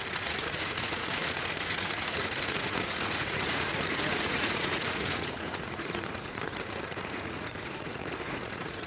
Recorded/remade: remade